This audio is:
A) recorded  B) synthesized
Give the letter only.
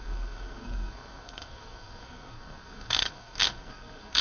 B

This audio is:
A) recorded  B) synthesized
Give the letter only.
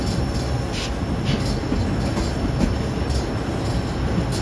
A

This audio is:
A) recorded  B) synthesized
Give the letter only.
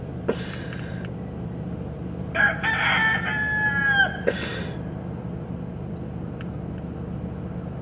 A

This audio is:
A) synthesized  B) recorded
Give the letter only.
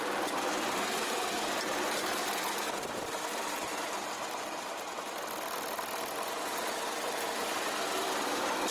B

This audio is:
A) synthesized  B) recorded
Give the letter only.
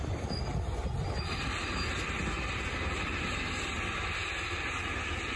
B